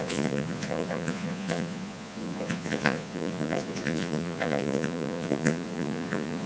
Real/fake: fake